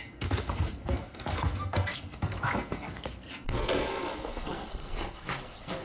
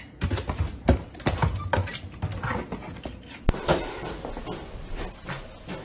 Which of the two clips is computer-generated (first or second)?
first